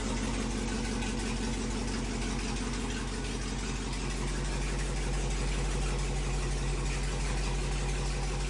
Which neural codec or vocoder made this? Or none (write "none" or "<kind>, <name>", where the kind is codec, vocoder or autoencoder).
none